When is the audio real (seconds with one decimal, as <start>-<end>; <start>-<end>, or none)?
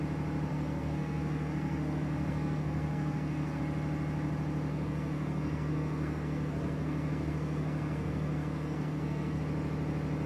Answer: 0.0-0.5; 3.6-4.7; 9.4-10.3